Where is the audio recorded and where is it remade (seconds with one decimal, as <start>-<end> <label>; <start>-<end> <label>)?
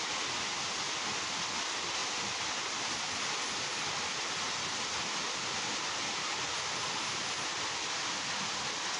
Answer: 0.0-9.0 recorded